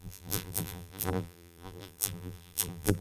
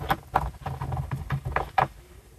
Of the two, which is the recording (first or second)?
second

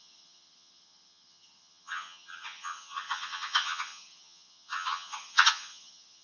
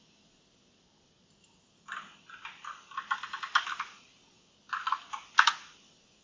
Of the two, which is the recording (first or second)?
second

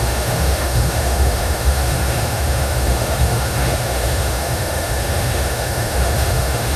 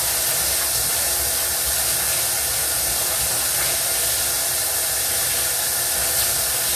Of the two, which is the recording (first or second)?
second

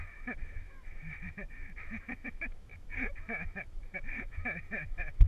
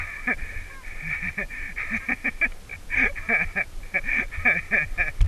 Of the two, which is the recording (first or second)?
second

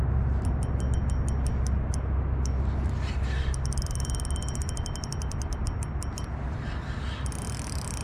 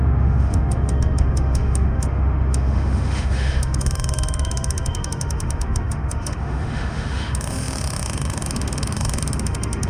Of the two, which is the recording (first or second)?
first